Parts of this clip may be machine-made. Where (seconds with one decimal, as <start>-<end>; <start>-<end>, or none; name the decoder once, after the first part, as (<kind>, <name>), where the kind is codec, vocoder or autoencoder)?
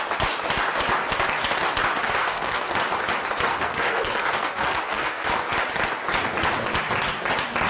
2.2-2.7 (codec, SNAC); 3.5-5.3